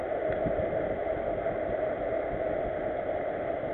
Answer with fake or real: real